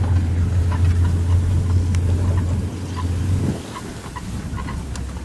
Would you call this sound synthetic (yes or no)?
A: no